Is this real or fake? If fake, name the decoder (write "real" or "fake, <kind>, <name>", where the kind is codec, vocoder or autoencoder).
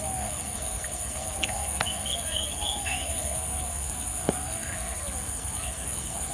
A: fake, codec, SNAC